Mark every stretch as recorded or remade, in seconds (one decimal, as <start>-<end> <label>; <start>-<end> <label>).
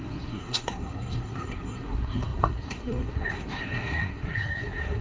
0.0-5.0 remade